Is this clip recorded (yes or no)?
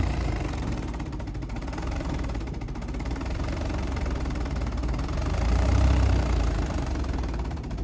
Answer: no